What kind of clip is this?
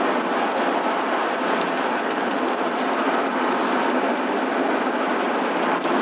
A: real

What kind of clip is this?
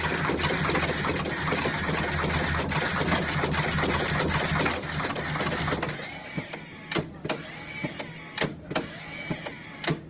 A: real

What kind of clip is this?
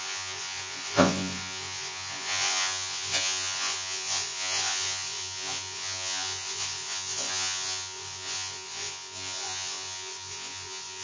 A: fake